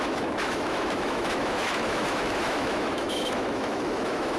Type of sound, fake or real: fake